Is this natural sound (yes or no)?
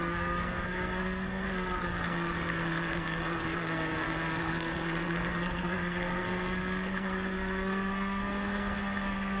no